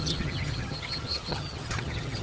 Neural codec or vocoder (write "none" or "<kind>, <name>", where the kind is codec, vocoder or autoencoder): vocoder, HiFi-GAN